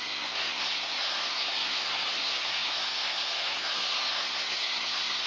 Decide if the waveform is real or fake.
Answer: fake